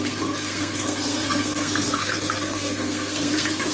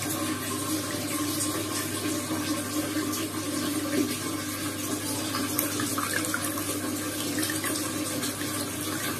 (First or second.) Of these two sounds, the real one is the second